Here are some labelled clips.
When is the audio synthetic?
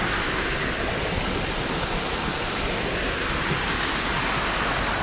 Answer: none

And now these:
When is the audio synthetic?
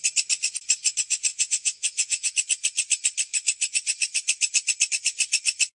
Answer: 1.3-2.3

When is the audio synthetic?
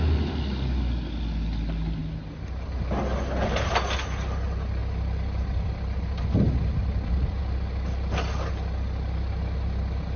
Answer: none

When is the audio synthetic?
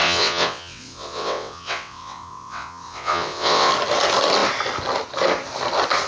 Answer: 0.0-3.7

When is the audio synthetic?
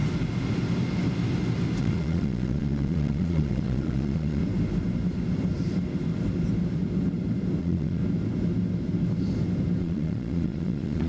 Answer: 1.8-4.4; 7.6-8.0; 9.8-11.1